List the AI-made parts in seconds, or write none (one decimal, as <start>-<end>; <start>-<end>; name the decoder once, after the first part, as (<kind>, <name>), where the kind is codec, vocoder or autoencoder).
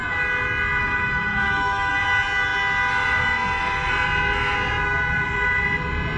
0.8-1.9 (autoencoder, DAC-VAE)